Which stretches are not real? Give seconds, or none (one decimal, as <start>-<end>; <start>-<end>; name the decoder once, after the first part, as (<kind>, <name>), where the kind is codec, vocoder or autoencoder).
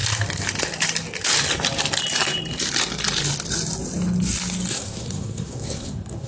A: 4.7-6.3 (codec, SNAC)